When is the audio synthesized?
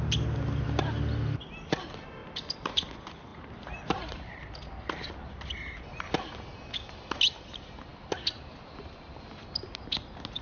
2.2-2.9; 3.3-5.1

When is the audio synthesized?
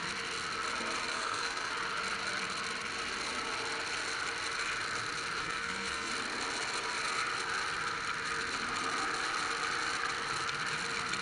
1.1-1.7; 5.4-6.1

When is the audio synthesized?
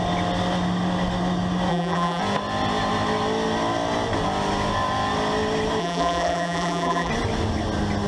1.7-2.2; 5.8-7.1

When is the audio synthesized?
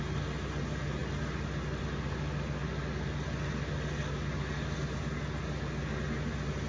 none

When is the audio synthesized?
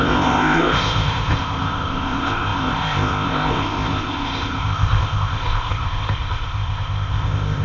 0.0-7.6